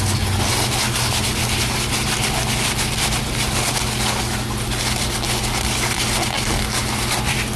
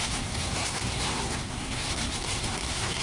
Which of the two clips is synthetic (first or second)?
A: second